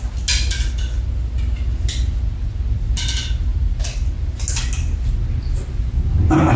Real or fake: real